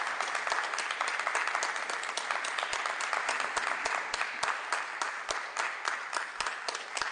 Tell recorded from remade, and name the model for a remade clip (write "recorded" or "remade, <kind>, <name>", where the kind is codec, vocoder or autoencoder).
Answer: remade, vocoder, BigVGAN v2